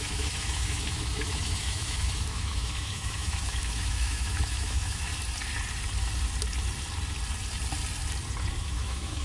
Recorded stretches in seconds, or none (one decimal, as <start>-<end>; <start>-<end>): 5.1-8.6